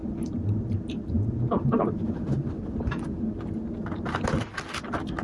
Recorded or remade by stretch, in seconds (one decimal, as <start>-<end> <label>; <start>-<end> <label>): 0.0-2.2 remade; 2.2-5.2 recorded